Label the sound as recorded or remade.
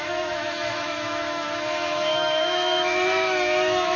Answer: remade